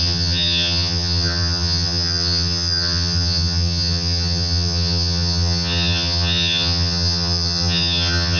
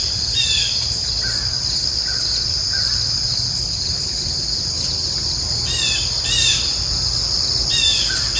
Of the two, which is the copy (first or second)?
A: first